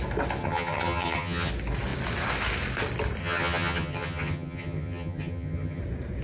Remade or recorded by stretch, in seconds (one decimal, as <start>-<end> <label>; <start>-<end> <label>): 0.0-0.4 recorded; 0.4-1.5 remade; 1.5-3.2 recorded; 3.2-5.8 remade; 5.8-6.2 recorded